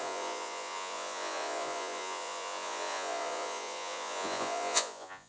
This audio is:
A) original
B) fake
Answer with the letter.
B